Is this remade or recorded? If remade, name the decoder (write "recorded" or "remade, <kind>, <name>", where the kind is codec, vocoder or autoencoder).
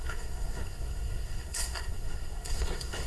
remade, codec, SNAC